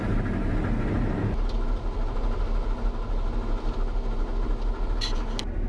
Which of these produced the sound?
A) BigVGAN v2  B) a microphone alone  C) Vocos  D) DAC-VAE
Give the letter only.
B